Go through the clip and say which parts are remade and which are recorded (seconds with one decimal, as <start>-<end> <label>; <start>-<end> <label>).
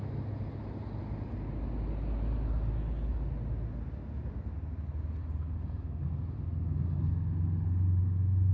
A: 0.0-8.5 recorded